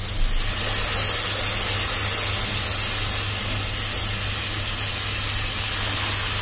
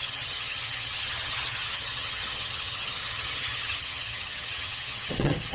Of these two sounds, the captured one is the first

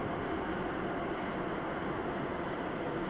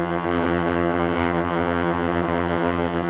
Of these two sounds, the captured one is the first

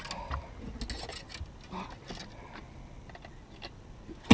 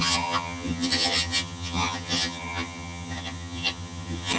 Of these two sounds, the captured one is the first